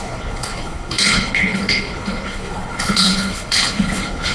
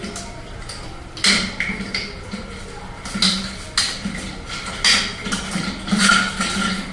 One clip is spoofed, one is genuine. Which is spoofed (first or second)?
first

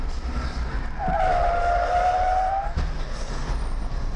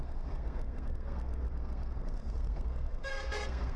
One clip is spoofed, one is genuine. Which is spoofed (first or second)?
second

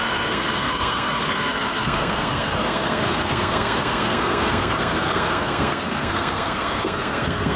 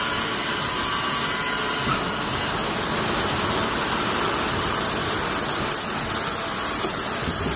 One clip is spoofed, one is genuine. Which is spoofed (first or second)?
first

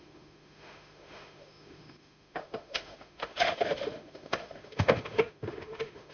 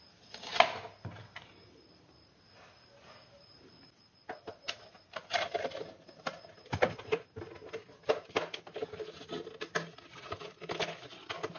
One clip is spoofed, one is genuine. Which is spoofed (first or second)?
first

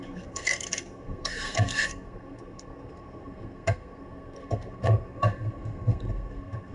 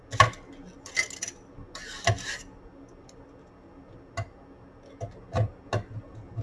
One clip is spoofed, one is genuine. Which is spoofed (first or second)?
first